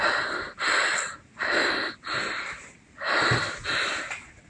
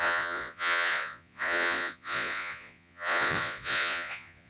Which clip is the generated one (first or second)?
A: second